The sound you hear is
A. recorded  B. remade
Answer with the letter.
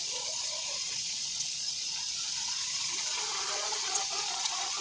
B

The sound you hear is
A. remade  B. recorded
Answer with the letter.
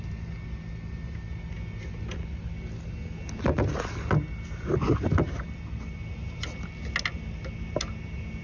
B